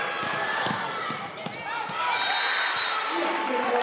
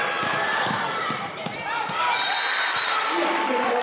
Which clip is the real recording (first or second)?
first